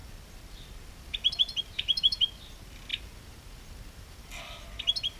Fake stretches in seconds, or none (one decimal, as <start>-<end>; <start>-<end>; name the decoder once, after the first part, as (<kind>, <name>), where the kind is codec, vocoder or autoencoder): none